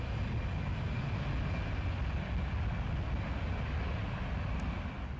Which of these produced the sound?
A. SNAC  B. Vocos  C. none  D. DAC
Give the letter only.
C